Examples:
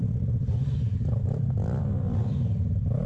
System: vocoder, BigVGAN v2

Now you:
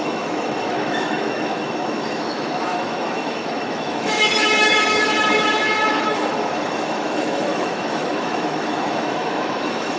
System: autoencoder, DAC-VAE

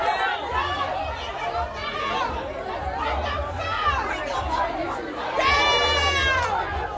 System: none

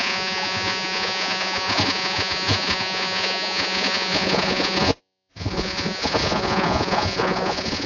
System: vocoder, Vocos